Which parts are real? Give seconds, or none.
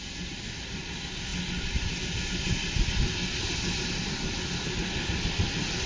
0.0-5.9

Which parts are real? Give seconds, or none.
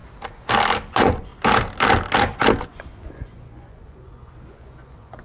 0.0-0.9; 1.3-2.6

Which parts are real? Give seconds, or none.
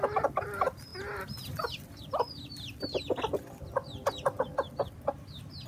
0.0-5.7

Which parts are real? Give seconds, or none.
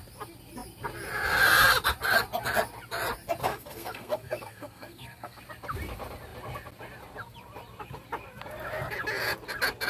0.0-3.5; 5.4-9.9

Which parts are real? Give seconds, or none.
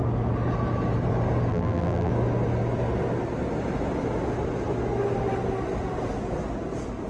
0.0-1.5; 2.1-7.1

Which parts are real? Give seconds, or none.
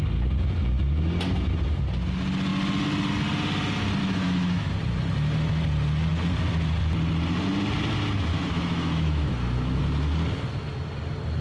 0.0-4.0; 4.7-8.3; 9.8-11.4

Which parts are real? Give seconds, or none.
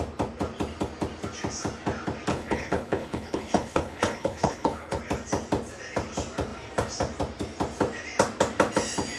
0.0-2.3; 5.0-9.2